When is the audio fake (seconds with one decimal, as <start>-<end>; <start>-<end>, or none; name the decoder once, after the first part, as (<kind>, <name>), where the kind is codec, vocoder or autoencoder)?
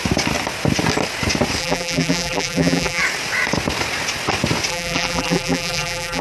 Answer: 1.6-3.0 (vocoder, BigVGAN v2); 4.7-6.2